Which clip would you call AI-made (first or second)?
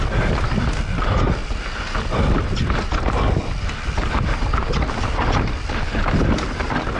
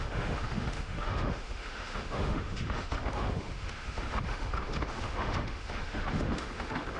second